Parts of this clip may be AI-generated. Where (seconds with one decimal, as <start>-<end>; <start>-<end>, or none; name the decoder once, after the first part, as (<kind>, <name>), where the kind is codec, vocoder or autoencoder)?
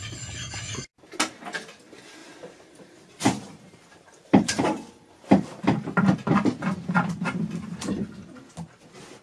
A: 2.2-4.9 (vocoder, BigVGAN v2)